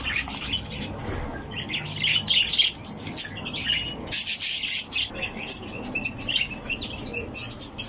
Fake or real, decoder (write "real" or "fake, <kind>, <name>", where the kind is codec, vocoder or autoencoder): real